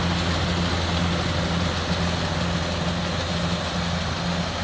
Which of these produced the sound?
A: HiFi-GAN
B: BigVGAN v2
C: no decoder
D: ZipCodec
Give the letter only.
C